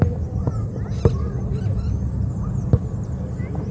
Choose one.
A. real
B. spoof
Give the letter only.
A